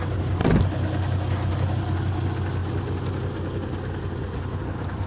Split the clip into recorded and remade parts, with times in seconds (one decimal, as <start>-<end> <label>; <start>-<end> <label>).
0.0-5.1 recorded